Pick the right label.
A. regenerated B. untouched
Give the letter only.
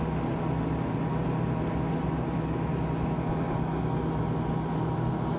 B